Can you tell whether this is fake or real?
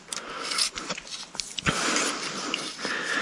real